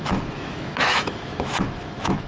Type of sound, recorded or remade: remade